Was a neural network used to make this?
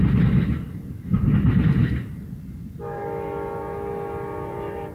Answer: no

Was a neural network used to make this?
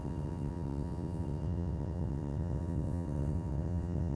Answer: yes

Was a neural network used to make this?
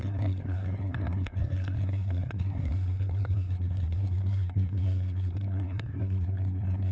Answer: yes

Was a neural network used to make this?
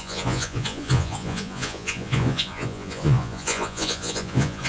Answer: yes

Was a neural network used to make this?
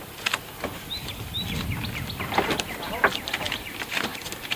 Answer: no